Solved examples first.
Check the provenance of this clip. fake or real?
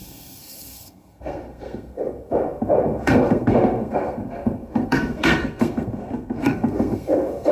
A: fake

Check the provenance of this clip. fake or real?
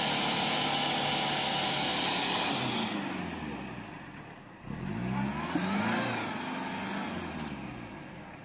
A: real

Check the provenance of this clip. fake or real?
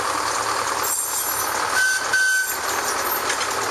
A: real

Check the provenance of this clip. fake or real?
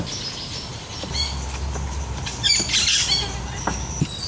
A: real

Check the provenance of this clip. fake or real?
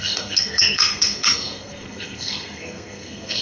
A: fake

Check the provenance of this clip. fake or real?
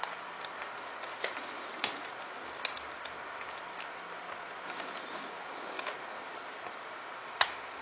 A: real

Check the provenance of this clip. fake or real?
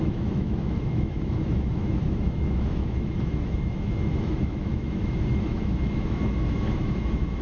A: fake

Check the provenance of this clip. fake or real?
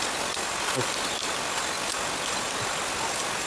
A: real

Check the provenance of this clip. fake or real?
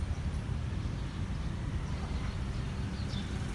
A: fake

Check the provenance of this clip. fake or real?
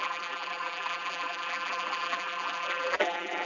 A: fake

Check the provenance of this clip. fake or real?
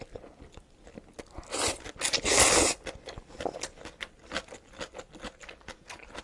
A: real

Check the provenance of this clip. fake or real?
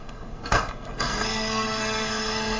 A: fake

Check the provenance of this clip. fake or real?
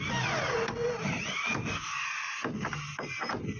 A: real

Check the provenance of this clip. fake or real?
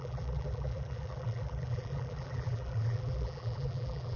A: fake